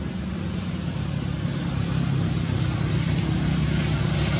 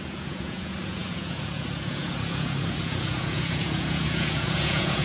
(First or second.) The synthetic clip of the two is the second